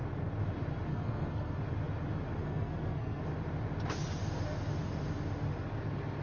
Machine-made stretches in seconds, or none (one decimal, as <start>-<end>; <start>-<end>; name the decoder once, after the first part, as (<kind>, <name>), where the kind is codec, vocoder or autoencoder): 0.9-1.6 (codec, SNAC); 2.4-3.2